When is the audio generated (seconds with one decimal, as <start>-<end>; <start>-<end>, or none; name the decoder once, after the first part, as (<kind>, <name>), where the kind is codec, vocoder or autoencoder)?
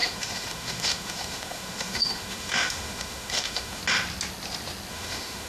0.0-3.8 (autoencoder, DAC-VAE); 4.9-5.5